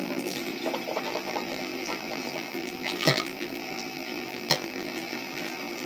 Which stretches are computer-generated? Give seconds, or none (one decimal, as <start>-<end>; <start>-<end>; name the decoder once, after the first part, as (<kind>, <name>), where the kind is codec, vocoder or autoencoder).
0.0-0.5 (vocoder, BigVGAN v2); 1.0-5.9